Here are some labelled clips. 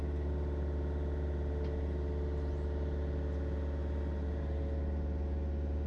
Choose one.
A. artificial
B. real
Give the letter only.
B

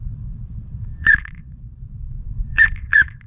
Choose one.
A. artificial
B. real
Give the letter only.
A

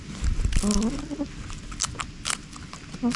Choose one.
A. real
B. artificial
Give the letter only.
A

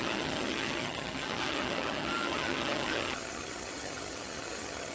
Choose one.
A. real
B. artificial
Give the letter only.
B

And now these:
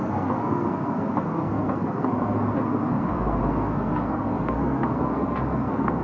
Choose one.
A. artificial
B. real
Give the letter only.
A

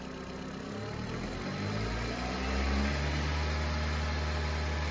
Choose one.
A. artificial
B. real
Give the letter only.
B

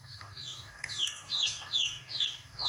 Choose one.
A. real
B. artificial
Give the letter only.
B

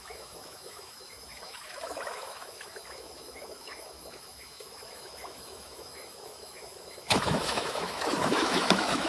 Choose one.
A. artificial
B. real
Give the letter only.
A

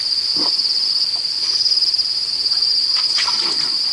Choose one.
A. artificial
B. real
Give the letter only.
B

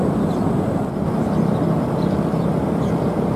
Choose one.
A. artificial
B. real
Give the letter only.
B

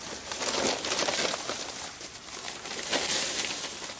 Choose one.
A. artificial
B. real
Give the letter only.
B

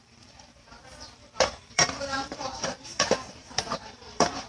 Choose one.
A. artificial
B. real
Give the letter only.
A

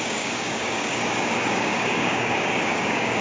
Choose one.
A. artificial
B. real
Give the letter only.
A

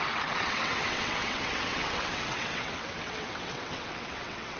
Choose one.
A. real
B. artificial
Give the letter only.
B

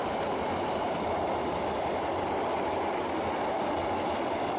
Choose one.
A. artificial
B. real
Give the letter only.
A